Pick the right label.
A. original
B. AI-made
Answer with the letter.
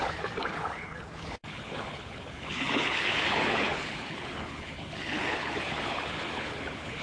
B